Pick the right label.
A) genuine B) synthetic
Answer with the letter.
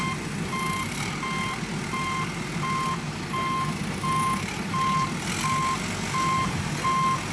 A